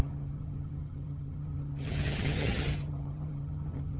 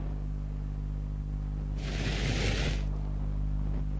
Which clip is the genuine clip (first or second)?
second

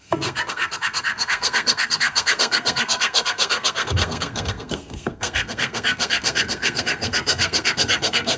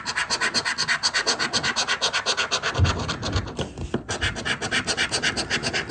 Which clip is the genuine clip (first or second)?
second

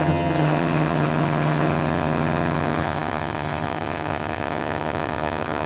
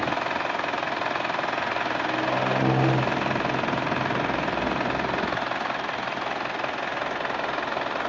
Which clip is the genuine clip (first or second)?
second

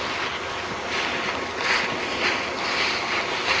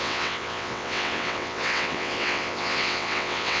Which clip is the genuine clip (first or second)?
first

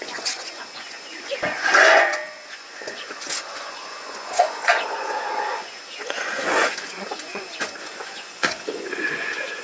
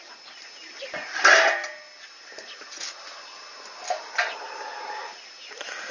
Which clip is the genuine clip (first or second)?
second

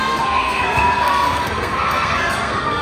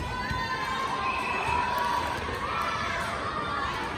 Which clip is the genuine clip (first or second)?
second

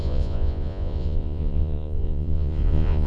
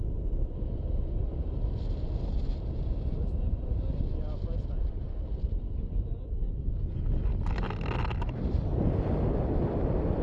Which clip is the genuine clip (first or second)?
second